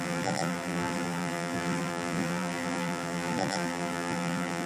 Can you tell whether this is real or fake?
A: fake